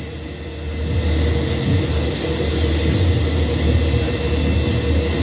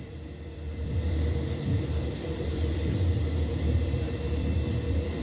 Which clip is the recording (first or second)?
first